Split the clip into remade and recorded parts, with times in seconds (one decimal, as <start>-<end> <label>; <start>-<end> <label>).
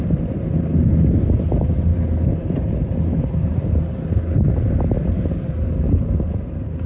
0.0-6.9 recorded